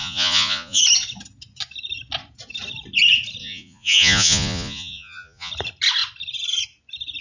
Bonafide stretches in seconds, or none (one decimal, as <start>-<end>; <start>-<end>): 0.8-3.4; 5.5-7.2